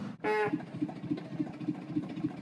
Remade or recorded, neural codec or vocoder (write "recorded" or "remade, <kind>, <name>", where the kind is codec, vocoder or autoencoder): recorded